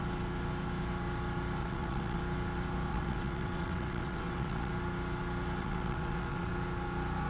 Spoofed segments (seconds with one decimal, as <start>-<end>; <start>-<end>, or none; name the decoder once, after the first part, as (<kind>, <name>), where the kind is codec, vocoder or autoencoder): 1.6-2.2 (vocoder, WaveNeXt); 2.9-4.7; 5.6-6.5